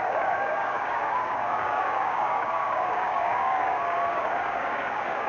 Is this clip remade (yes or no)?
yes